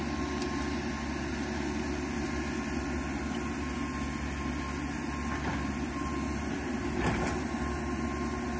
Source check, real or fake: real